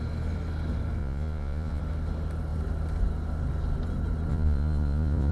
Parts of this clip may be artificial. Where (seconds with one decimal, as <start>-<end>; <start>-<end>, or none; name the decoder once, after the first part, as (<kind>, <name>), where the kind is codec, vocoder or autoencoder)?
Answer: 1.0-1.8 (vocoder, Vocos); 4.3-5.3